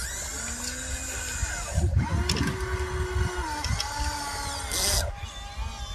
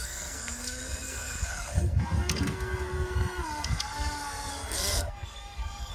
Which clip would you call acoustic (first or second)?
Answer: first